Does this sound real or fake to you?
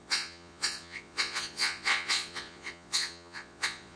fake